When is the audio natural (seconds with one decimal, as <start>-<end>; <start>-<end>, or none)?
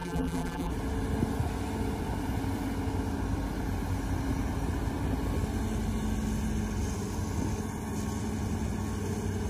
0.7-9.5